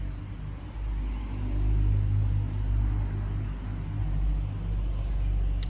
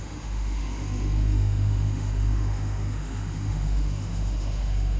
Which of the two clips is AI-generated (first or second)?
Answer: second